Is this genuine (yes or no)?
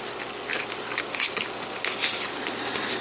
yes